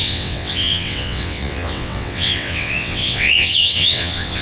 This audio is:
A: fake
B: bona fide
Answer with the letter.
A